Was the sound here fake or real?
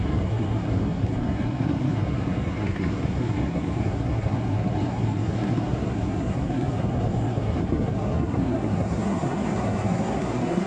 fake